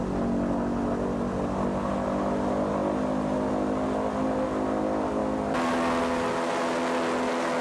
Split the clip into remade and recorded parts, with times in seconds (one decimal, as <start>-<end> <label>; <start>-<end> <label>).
0.0-7.6 recorded